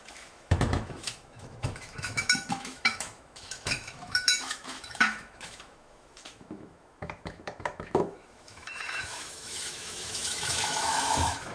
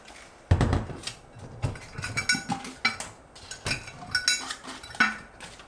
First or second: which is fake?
first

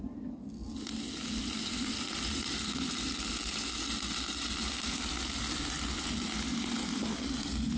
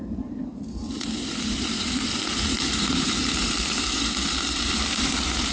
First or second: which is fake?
second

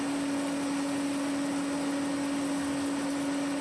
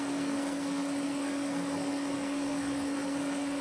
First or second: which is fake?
second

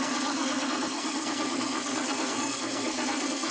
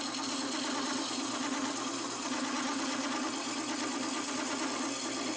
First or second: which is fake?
first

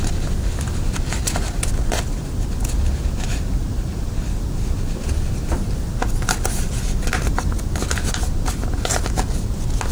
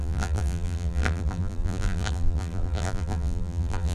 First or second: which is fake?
second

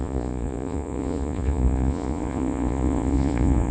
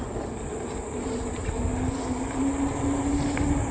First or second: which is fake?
first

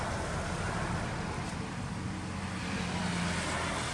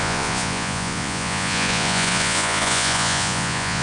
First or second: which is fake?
second